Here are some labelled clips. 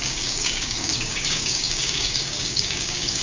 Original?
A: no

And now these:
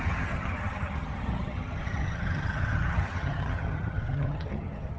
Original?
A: no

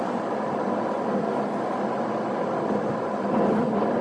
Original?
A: yes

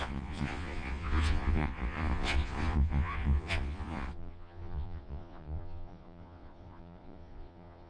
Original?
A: no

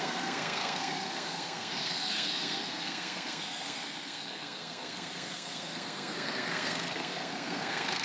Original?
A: no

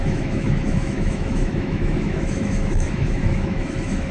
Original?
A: no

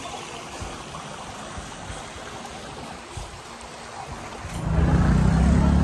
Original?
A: yes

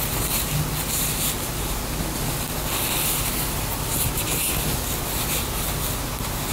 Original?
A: yes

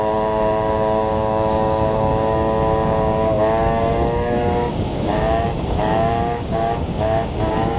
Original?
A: no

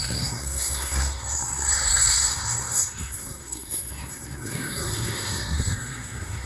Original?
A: no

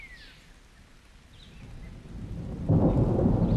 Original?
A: yes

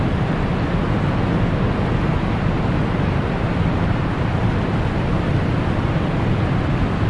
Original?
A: yes